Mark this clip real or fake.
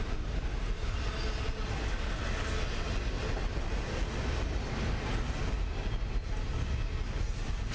real